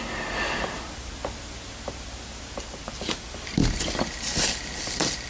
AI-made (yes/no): no